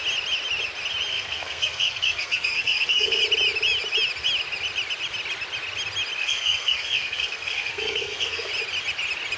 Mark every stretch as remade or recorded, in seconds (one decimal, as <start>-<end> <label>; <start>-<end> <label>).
0.0-1.1 recorded; 1.1-3.2 remade; 3.2-6.2 recorded; 6.2-8.5 remade; 8.5-9.4 recorded